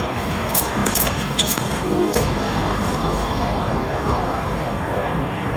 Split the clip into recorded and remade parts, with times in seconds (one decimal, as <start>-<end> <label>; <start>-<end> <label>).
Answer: 0.0-5.6 remade